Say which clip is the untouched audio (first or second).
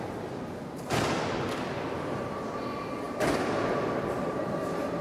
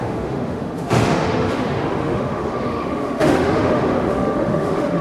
first